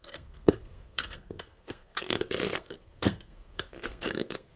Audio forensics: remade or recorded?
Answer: remade